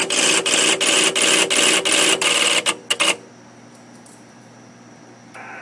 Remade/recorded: recorded